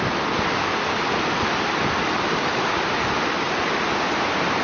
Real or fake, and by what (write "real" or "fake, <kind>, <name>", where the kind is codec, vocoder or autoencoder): real